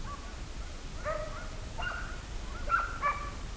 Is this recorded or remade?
recorded